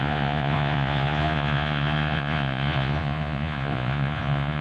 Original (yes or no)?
no